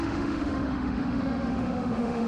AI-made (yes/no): yes